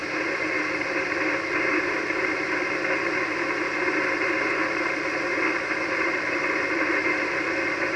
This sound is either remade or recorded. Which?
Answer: recorded